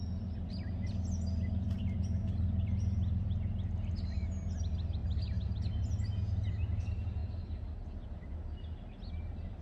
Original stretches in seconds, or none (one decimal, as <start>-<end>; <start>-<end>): 0.0-9.6